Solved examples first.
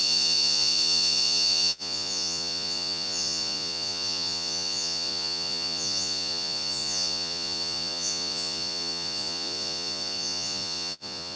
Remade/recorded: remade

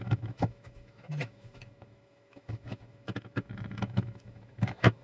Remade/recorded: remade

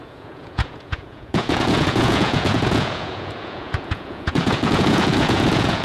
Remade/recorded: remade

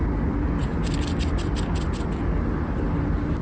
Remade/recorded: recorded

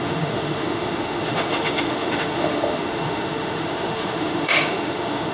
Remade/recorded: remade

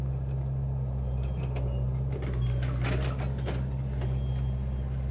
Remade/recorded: recorded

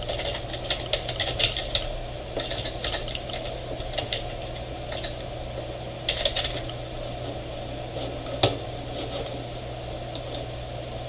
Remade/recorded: recorded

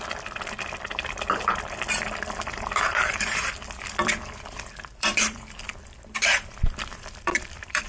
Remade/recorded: remade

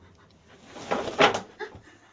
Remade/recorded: recorded